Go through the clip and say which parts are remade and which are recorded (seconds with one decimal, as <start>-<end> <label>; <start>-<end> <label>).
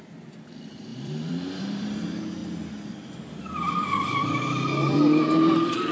0.0-2.4 remade; 2.4-3.3 recorded; 3.3-5.9 remade